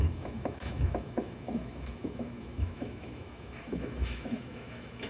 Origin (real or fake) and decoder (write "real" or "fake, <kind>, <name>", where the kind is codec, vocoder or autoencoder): fake, autoencoder, DAC-VAE